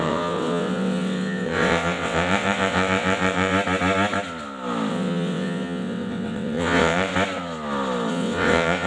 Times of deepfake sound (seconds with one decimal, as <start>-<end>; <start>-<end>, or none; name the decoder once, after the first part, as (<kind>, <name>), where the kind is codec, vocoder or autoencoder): 0.0-3.5 (vocoder, WaveNeXt); 4.9-7.1; 8.1-8.9